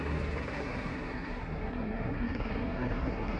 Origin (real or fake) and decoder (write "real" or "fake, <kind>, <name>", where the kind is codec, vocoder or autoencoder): fake, codec, SNAC